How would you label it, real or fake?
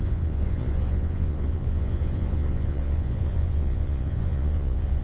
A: fake